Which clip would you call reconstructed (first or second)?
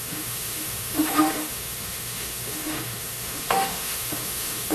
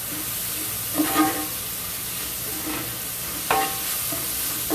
first